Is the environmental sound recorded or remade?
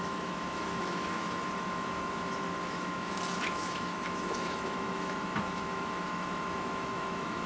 remade